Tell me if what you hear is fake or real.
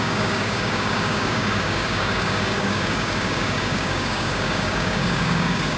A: fake